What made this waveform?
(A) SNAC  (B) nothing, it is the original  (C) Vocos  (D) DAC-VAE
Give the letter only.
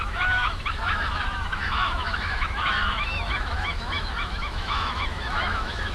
D